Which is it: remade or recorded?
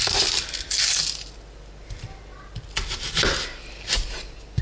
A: recorded